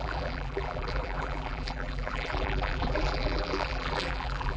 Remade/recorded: remade